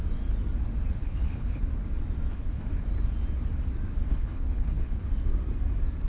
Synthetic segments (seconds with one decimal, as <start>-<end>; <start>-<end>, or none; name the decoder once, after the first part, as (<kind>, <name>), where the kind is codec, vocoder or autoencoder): 1.0-1.6 (codec, HILCodec); 2.3-2.8; 4.1-5.0